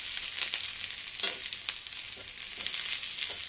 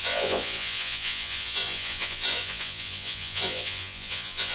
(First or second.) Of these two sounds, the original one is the first